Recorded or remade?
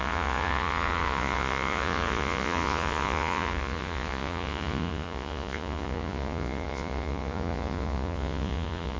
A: remade